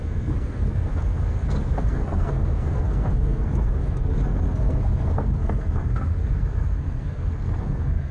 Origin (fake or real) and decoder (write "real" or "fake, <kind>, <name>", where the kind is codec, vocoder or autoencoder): fake, codec, SNAC